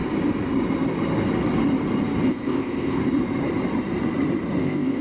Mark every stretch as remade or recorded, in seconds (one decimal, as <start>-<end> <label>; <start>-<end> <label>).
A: 0.0-2.3 recorded; 2.3-3.0 remade; 3.0-4.6 recorded; 4.6-5.0 remade